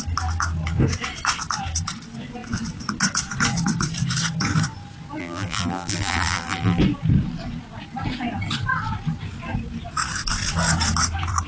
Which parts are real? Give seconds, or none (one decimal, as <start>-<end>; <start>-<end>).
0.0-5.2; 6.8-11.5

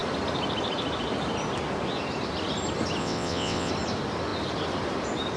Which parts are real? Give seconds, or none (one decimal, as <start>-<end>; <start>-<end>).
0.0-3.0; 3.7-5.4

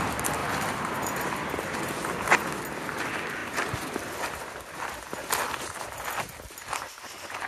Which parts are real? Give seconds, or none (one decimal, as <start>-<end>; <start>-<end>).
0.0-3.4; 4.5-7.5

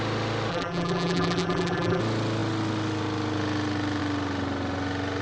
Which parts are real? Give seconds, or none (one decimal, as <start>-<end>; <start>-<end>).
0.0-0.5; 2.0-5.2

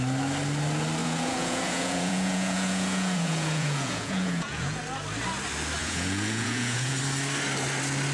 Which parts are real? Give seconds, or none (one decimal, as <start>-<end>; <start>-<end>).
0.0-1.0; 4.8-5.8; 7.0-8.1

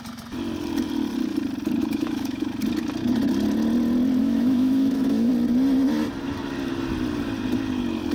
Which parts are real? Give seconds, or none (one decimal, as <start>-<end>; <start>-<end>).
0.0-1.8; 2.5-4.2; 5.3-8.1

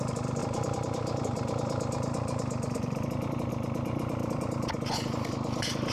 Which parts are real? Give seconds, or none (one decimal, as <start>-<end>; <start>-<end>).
0.0-0.4; 3.5-4.2; 5.3-5.9

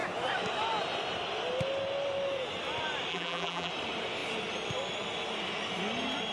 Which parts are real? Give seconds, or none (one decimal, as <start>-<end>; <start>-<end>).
0.0-3.1; 3.7-6.3